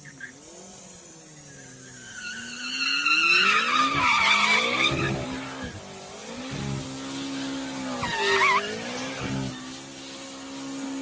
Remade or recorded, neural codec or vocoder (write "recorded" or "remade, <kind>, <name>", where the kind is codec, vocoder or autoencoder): recorded